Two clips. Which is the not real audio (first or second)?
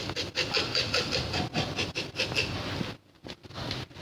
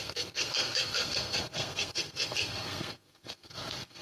second